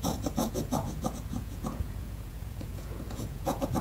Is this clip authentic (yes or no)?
no